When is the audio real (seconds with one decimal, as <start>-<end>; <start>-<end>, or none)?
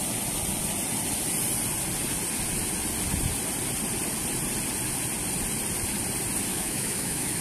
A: 0.0-6.5